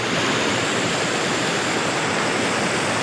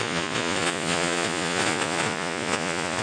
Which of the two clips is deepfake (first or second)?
second